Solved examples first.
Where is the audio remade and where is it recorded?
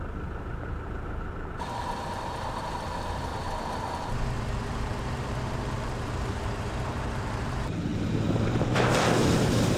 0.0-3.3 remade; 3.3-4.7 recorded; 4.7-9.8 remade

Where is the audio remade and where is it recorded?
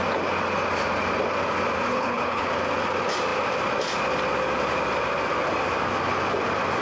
0.0-1.9 recorded; 1.9-2.5 remade; 2.5-6.8 recorded